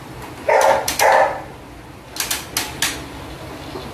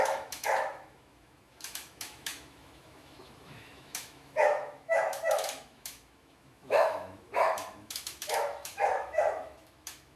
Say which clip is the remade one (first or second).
second